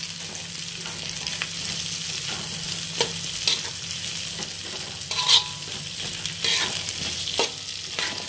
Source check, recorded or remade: recorded